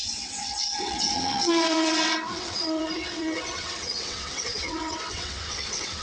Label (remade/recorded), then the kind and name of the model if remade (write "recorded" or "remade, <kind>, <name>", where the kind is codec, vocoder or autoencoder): remade, vocoder, WaveNeXt